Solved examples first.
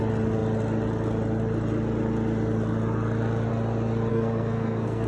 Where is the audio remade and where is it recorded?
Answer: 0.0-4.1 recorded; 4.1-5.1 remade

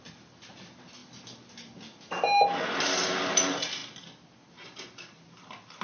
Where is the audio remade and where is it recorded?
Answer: 0.0-5.8 recorded

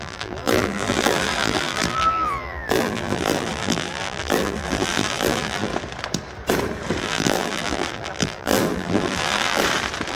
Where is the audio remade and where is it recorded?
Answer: 0.0-5.7 remade; 5.7-7.0 recorded; 7.0-9.6 remade; 9.6-10.1 recorded

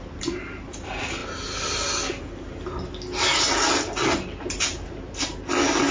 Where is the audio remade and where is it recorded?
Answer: 0.0-5.9 recorded

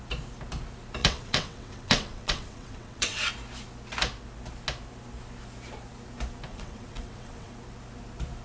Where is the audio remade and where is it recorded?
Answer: 0.0-1.0 recorded; 1.0-3.3 remade; 3.3-6.5 recorded; 6.5-7.5 remade; 7.5-8.4 recorded

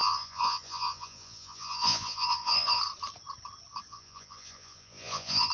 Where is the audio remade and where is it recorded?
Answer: 0.0-2.8 remade; 2.8-3.9 recorded; 3.9-5.5 remade

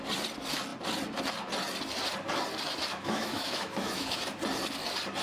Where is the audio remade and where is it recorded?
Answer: 0.0-2.9 recorded; 2.9-4.2 remade; 4.2-5.2 recorded

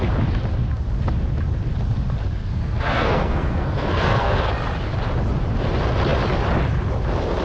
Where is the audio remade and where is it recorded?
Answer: 0.0-2.4 recorded; 2.4-4.5 remade; 4.5-7.4 recorded